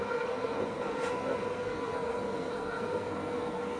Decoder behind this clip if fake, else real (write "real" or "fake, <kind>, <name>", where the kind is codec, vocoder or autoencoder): fake, codec, SNAC